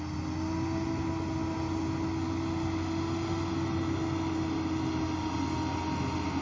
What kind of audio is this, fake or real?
real